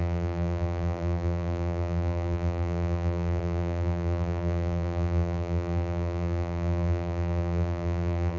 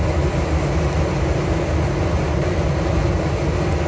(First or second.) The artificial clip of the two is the first